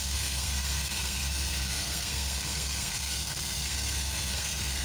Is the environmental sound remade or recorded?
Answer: remade